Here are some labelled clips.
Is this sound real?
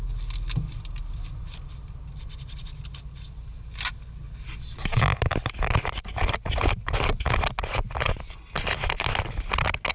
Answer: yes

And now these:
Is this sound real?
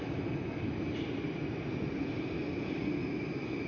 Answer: yes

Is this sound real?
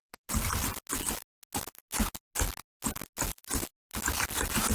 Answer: yes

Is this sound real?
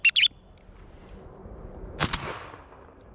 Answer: yes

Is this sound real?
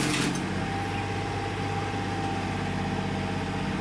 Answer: yes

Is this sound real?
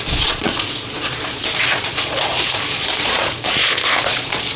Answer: no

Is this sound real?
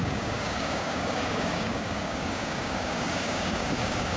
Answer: no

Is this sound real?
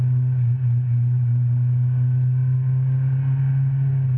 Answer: yes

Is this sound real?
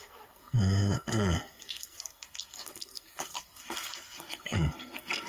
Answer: no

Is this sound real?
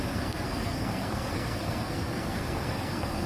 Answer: no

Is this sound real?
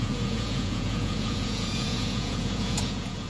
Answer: no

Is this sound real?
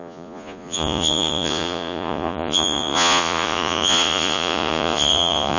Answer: no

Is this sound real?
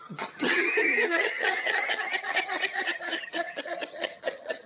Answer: no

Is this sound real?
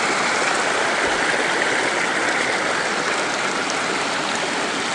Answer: yes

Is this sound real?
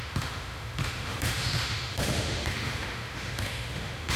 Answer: no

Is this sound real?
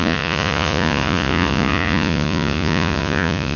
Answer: no